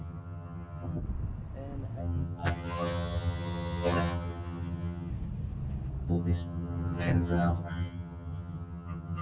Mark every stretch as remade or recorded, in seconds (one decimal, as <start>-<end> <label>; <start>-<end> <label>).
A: 0.0-1.0 remade; 1.0-2.0 recorded; 2.0-5.1 remade; 5.1-6.1 recorded; 6.1-9.2 remade